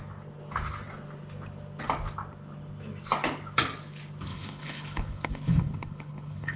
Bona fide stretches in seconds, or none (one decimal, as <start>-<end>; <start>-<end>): 0.0-4.3